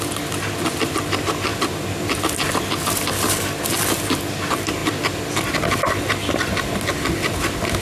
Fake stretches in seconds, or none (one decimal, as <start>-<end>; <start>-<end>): none